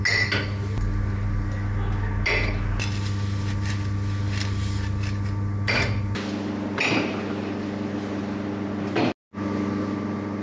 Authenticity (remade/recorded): recorded